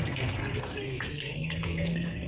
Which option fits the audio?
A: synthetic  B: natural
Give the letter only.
A